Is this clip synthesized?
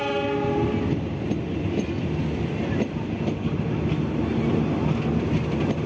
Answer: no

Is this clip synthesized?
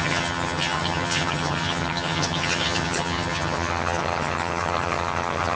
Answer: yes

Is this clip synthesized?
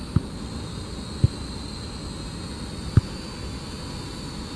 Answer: no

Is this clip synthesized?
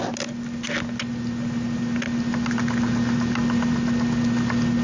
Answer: no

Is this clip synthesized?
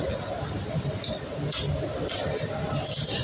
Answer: no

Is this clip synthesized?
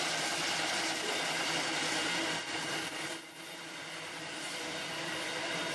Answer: yes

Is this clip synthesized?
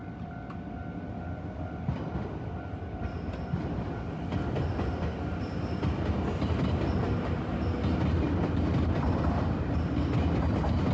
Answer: no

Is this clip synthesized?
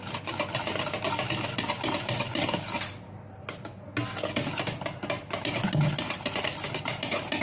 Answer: no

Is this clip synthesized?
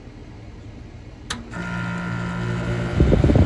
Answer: no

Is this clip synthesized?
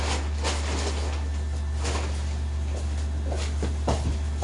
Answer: no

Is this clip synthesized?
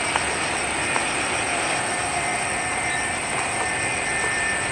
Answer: yes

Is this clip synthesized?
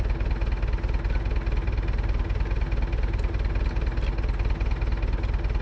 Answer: no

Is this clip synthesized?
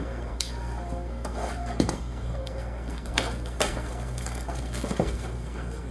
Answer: yes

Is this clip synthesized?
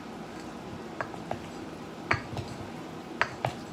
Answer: no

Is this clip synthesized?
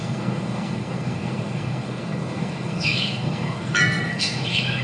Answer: yes